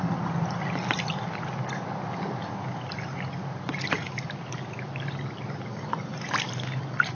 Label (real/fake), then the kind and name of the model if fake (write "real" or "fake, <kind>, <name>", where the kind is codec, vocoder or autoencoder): real